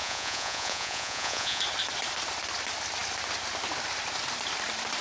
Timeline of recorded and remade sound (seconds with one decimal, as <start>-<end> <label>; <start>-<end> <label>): 0.0-1.6 remade; 1.6-5.0 recorded

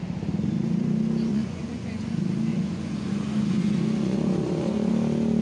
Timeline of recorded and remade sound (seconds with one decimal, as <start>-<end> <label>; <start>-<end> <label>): 0.0-1.3 recorded; 1.3-2.1 remade; 2.1-2.5 recorded; 2.5-4.9 remade; 4.9-5.4 recorded

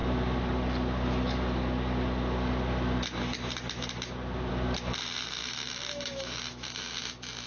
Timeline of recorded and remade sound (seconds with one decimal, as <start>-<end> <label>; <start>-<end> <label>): 0.0-5.4 recorded; 5.4-7.0 remade; 7.0-7.5 recorded

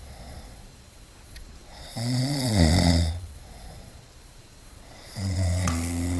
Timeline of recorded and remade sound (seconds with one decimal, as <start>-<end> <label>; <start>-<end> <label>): 0.0-6.2 remade

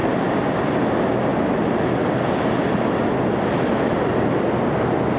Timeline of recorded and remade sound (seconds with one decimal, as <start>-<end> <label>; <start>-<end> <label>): 0.0-5.2 recorded

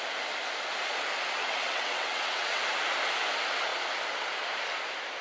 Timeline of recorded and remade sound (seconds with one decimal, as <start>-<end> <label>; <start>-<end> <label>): 0.0-1.4 recorded; 1.4-2.6 remade; 2.6-5.2 recorded

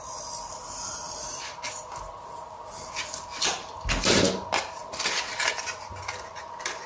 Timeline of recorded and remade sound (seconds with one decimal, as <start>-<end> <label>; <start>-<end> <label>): 0.0-6.9 recorded